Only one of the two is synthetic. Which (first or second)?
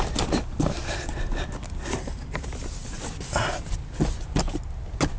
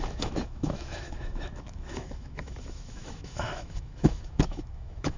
second